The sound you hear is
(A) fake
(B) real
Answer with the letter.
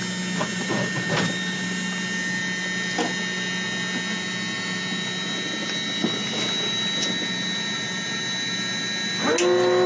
B